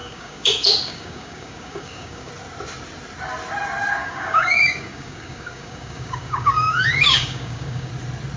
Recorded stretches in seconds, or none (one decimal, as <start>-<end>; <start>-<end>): 2.3-4.0; 7.9-8.4